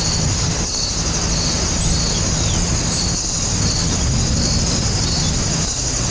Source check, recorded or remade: recorded